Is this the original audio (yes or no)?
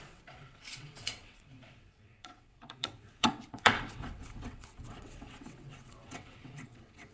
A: no